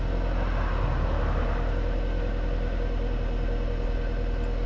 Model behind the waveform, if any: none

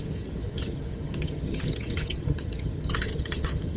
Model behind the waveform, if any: vocoder, HiFi-GAN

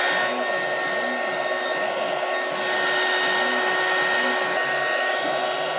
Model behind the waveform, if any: none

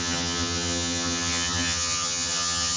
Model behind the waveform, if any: vocoder, HiFi-GAN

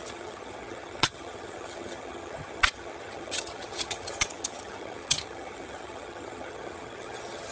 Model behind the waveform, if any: vocoder, HiFi-GAN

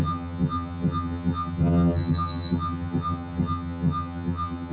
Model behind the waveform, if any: vocoder, HiFi-GAN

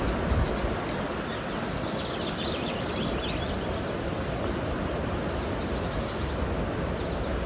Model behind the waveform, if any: none